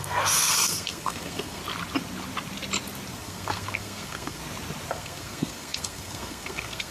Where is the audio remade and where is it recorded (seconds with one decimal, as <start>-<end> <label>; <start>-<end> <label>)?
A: 0.0-1.6 remade; 1.6-3.1 recorded; 3.1-4.4 remade; 4.4-4.9 recorded; 4.9-6.9 remade